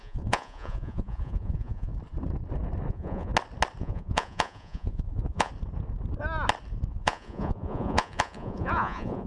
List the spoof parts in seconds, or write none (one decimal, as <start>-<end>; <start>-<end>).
0.0-1.9; 2.9-3.3; 3.8-5.5; 6.9-9.3